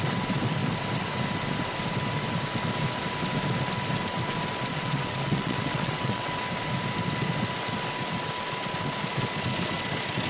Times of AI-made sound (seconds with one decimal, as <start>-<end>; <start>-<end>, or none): 4.7-6.3